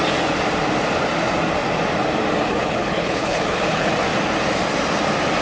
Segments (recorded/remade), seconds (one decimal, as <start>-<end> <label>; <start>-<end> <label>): 0.0-2.5 recorded; 2.5-3.9 remade; 3.9-5.4 recorded